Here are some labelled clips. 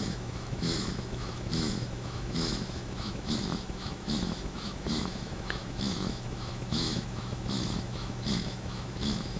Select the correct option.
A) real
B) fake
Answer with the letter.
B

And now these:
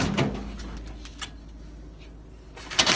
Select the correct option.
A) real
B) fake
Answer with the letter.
A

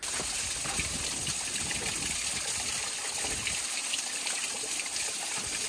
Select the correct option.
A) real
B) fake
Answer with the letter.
A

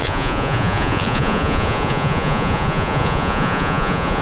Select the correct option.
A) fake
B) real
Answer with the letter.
A